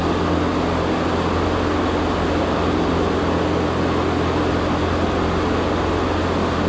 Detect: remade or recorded recorded